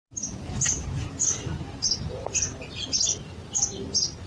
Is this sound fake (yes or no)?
no